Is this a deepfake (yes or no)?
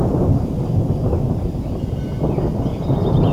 no